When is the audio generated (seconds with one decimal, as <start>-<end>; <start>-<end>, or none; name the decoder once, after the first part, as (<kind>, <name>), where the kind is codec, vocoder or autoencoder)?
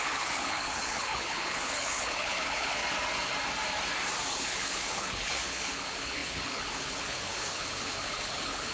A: 0.0-2.8 (codec, HILCodec); 4.3-8.7